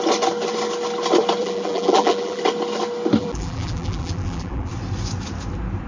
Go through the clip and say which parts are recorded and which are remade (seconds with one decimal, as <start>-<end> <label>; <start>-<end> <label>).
0.0-1.4 recorded; 1.4-2.4 remade; 2.4-3.2 recorded; 3.2-4.7 remade; 4.7-5.9 recorded